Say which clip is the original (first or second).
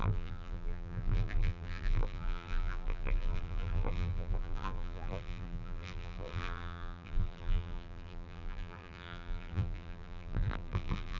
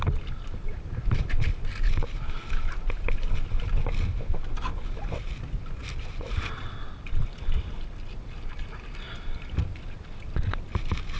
second